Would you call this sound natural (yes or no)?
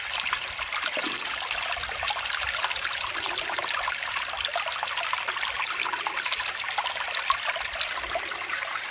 yes